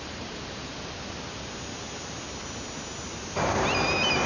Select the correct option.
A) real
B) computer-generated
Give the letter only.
A